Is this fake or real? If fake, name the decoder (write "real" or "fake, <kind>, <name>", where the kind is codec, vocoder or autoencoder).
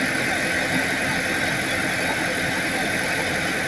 real